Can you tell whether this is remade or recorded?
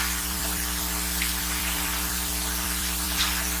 remade